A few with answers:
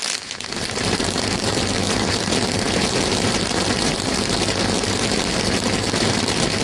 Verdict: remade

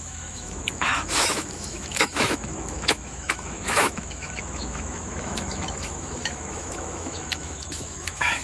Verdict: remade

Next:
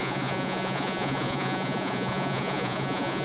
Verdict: remade